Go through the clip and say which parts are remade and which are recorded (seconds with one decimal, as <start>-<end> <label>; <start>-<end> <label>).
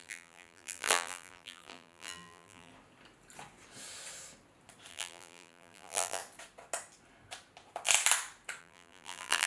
0.0-2.7 remade; 2.7-4.9 recorded; 4.9-6.2 remade; 6.2-8.6 recorded; 8.6-9.5 remade